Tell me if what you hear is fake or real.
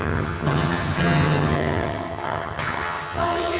fake